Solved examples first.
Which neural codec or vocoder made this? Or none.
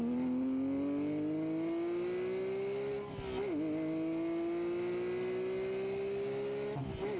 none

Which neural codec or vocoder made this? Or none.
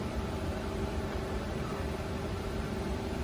vocoder, BigVGAN v2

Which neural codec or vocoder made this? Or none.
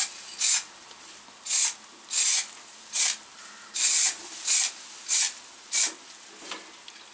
none